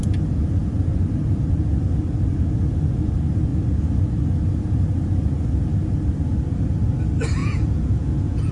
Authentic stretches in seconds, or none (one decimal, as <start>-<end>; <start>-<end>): 0.0-7.4